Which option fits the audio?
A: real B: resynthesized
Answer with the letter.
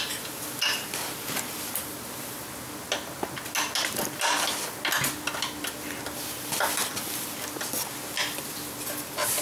A